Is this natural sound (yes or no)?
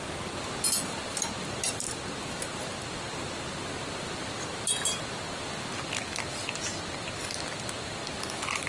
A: yes